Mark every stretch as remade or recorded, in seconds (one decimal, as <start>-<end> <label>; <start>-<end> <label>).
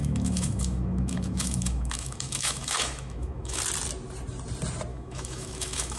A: 0.0-3.6 remade; 3.6-4.9 recorded; 4.9-6.0 remade